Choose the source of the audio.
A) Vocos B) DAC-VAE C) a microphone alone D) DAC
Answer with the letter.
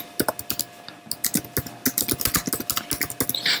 C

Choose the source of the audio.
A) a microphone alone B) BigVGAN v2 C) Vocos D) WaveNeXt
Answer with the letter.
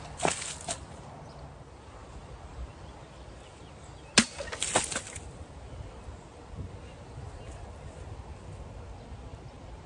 A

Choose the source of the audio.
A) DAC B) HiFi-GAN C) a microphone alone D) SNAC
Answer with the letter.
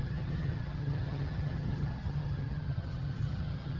B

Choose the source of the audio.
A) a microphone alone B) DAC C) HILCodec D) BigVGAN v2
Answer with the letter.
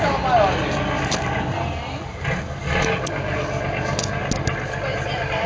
A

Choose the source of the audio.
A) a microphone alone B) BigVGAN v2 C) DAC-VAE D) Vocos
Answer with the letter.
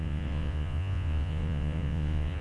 D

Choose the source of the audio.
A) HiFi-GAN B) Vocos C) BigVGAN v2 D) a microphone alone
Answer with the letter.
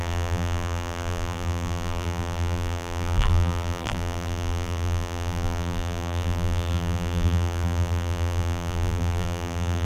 C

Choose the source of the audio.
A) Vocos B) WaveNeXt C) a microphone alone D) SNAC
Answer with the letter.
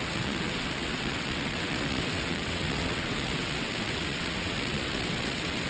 B